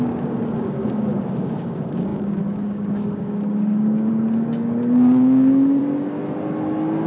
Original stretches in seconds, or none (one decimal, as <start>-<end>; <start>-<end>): 5.8-7.1